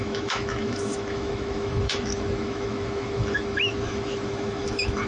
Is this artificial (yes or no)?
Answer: yes